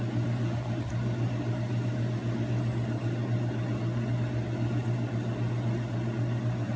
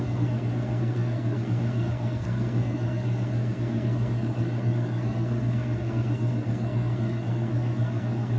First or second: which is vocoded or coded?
second